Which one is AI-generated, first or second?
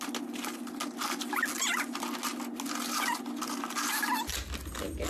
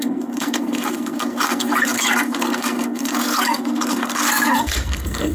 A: second